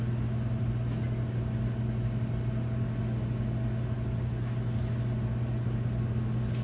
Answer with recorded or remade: recorded